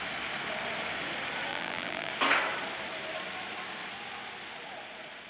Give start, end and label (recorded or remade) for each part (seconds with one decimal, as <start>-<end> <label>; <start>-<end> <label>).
0.0-1.5 recorded; 1.5-2.1 remade; 2.1-5.3 recorded